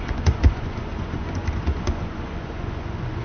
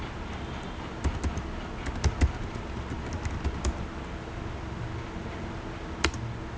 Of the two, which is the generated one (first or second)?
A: first